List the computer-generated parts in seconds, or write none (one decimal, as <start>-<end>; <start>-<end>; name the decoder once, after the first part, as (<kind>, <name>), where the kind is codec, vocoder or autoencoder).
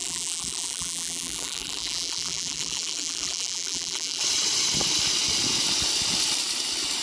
0.0-4.2 (vocoder, BigVGAN v2)